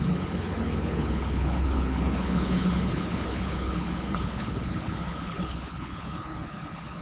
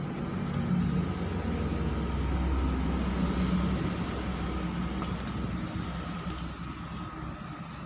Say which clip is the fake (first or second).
first